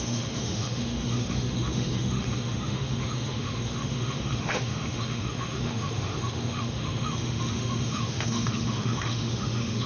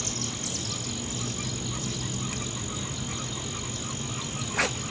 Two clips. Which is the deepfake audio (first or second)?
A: first